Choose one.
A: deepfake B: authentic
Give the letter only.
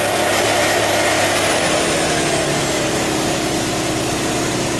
B